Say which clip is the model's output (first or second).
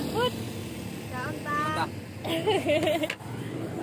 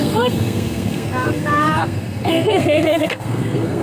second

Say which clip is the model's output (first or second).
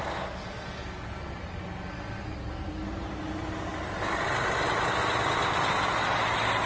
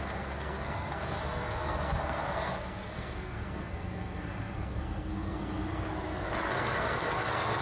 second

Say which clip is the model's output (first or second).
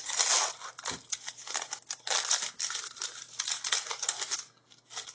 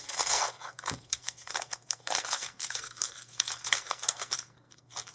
second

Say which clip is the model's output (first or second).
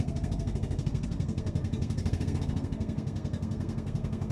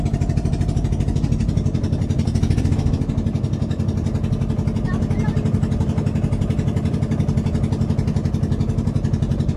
first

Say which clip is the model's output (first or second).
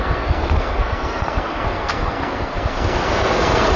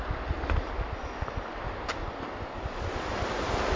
first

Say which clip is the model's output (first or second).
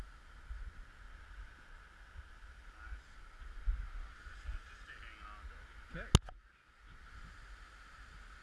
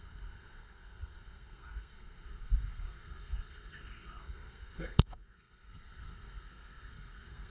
second